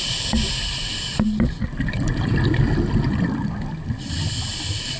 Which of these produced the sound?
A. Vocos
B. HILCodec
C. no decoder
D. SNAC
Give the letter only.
C